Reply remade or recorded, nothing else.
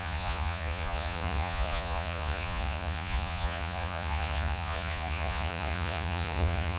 remade